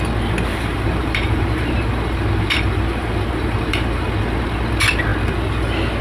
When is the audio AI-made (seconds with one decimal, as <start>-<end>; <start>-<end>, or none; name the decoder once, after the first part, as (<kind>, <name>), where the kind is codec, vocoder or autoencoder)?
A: 0.5-4.1 (vocoder, BigVGAN v2)